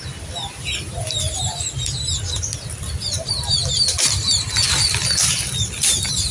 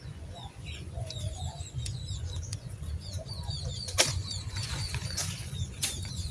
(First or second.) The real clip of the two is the first